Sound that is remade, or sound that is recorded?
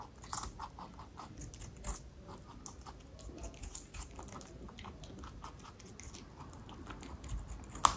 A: recorded